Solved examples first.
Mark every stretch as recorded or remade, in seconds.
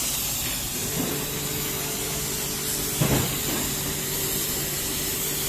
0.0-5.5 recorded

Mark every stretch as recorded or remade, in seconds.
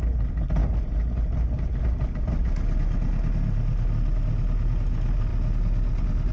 0.0-6.3 recorded